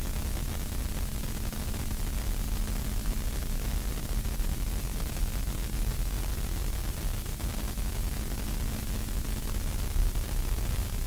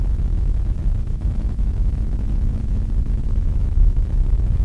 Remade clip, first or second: second